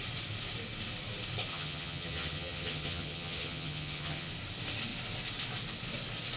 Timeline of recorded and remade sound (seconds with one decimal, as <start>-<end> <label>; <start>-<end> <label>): 0.0-1.5 recorded; 1.5-4.3 remade; 4.3-6.4 recorded